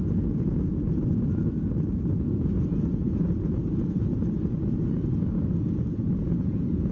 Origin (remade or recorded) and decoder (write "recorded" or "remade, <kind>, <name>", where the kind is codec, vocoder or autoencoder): remade, vocoder, Vocos